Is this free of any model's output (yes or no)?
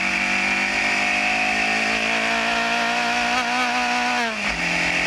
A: yes